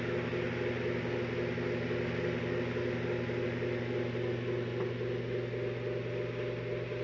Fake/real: real